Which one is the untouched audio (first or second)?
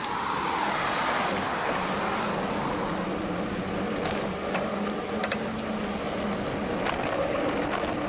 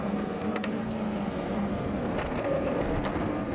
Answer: first